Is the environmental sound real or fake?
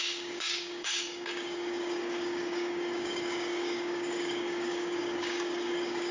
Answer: fake